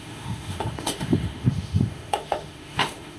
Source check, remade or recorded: remade